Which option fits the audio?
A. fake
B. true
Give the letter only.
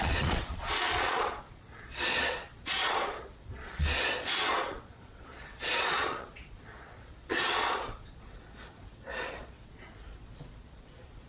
A